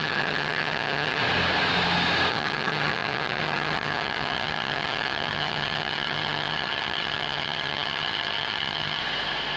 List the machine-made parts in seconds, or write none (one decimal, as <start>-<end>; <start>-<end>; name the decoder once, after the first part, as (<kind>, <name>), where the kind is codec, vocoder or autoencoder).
0.0-1.2 (vocoder, HiFi-GAN); 2.3-9.0